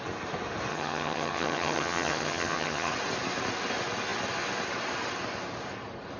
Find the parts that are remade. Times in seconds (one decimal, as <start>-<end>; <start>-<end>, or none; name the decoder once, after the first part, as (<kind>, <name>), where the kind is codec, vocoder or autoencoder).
0.7-2.9 (vocoder, HiFi-GAN)